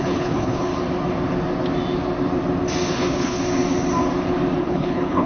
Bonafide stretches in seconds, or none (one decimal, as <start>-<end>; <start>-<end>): 0.7-2.9; 3.4-4.6